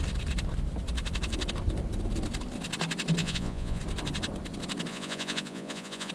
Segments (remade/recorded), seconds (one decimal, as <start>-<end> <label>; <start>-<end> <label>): 0.0-3.2 recorded; 3.2-3.8 remade; 3.8-4.9 recorded; 4.9-6.1 remade